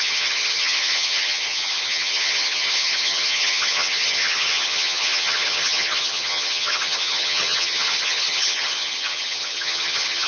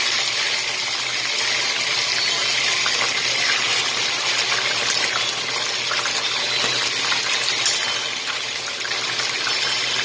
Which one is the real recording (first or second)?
second